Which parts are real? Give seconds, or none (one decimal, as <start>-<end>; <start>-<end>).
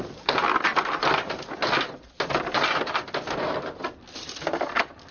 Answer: 0.0-5.1